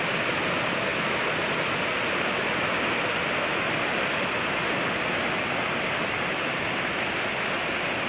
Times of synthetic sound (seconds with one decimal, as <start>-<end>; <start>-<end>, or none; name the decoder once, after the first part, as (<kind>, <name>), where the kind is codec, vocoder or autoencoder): none